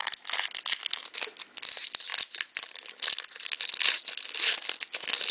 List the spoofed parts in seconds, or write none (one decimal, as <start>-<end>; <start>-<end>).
none